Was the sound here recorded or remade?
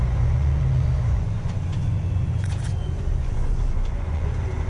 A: remade